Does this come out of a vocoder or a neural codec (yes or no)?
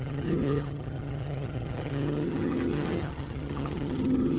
yes